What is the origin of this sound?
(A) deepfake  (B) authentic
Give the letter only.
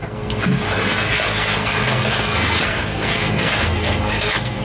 A